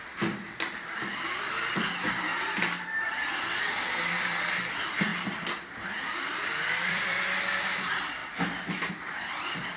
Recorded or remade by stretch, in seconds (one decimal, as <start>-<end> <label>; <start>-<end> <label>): 0.0-2.3 remade; 2.3-2.9 recorded; 2.9-8.2 remade; 8.2-8.9 recorded; 8.9-9.8 remade